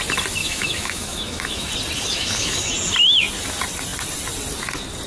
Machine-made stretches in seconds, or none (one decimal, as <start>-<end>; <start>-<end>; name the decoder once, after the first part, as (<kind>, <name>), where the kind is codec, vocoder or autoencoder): 0.4-1.7 (autoencoder, DAC-VAE); 2.1-2.7